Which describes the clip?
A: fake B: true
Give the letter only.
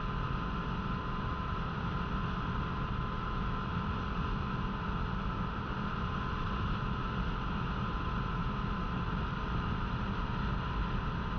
B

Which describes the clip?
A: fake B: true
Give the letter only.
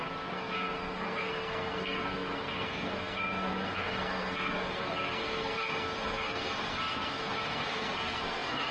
A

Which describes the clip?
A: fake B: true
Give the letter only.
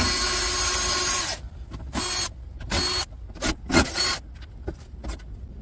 B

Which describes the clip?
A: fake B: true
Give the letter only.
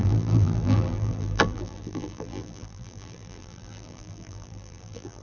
A